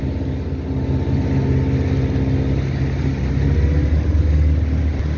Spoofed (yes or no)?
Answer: no